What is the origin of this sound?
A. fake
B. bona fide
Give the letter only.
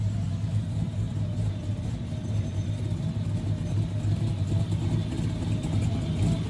B